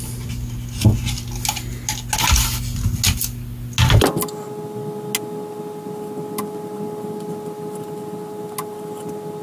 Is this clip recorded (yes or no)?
yes